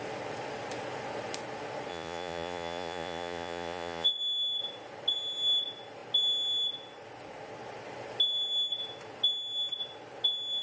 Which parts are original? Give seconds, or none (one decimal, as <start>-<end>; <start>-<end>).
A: 0.0-1.9; 4.2-10.6